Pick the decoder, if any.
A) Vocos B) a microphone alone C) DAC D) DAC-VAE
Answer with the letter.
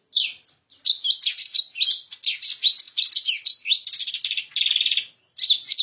B